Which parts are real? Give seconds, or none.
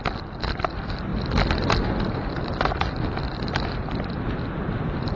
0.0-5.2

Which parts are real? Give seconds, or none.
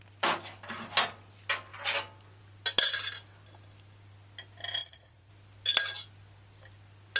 0.0-4.8; 5.3-7.2